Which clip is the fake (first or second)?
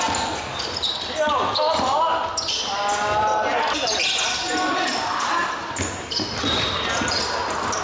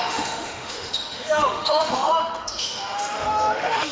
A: second